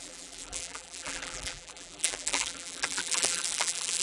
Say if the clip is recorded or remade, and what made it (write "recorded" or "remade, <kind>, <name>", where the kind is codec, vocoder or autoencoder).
remade, vocoder, BigVGAN v2